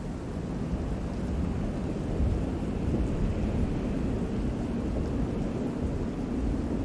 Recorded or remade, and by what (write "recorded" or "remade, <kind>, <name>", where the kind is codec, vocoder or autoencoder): recorded